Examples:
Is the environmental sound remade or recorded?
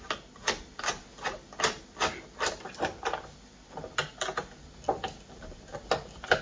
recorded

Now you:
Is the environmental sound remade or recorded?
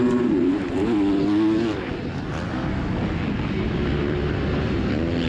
recorded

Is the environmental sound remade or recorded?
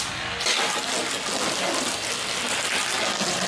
recorded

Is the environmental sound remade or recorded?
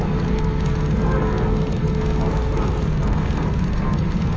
remade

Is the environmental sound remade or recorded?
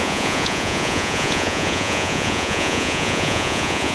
remade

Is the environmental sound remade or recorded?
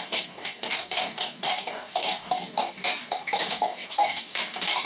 remade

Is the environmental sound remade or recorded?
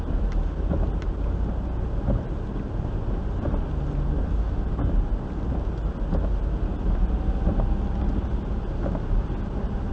recorded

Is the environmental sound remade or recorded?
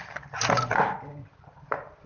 recorded